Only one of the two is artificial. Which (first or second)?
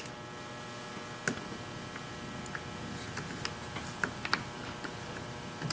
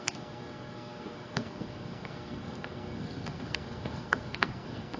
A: second